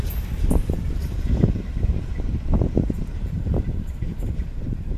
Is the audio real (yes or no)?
no